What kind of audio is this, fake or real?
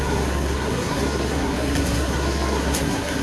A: fake